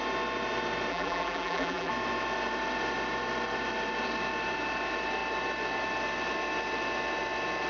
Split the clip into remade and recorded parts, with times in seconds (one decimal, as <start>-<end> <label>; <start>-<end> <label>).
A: 0.0-0.9 recorded; 0.9-1.9 remade; 1.9-7.7 recorded